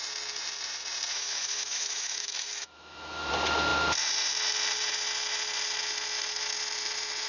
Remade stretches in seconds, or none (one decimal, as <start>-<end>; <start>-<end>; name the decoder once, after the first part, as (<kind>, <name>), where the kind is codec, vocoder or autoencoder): 1.1-3.3 (autoencoder, DAC-VAE)

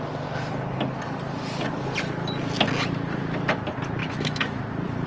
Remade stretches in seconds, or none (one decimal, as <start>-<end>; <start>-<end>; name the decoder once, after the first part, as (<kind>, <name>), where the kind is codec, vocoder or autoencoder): 4.0-4.6 (autoencoder, DAC-VAE)

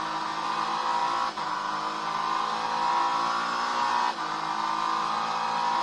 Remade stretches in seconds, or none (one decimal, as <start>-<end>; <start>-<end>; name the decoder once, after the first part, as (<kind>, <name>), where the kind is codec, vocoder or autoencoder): none